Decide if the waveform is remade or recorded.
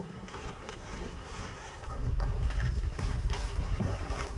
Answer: remade